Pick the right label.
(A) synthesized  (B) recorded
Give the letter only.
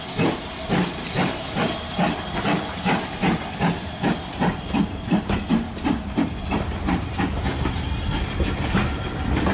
B